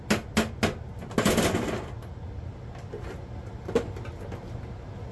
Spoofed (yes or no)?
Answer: no